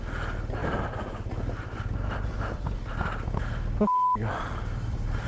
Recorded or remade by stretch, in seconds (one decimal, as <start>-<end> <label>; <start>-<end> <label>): 0.0-5.3 recorded